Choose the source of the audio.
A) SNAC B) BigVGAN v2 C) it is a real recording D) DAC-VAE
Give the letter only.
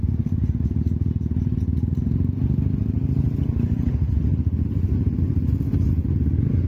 C